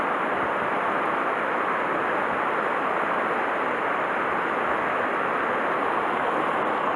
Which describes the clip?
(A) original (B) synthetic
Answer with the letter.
A